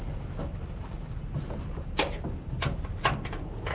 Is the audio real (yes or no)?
yes